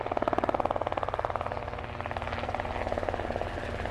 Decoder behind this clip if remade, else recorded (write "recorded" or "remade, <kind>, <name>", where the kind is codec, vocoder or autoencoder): recorded